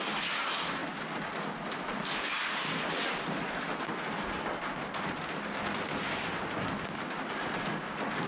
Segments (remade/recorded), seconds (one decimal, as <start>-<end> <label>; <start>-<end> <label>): 0.0-8.3 recorded